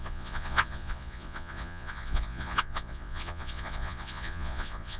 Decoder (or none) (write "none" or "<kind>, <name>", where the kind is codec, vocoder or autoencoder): vocoder, Vocos